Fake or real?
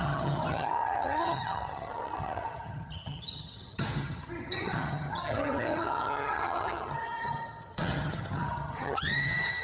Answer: fake